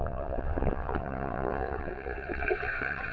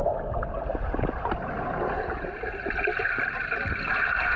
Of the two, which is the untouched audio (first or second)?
second